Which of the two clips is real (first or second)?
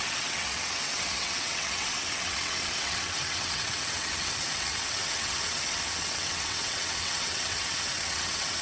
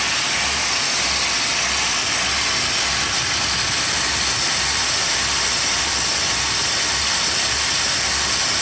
second